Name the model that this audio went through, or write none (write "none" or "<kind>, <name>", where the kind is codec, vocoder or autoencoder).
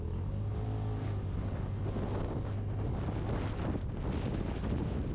none